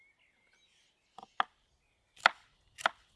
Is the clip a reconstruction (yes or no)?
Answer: no